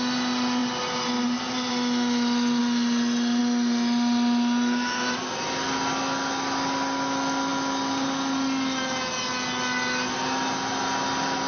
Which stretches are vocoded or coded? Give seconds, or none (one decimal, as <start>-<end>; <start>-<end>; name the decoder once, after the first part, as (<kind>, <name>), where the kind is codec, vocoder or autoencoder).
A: none